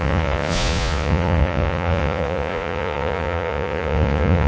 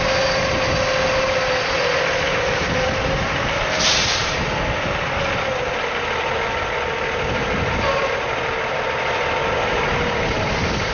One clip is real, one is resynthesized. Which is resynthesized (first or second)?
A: first